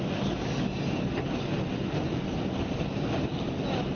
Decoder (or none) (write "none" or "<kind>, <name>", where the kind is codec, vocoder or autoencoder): none